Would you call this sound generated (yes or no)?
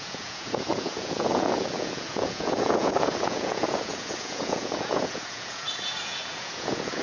yes